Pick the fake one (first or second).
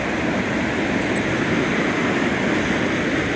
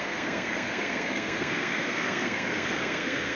second